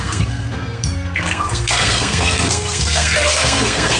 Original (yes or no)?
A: no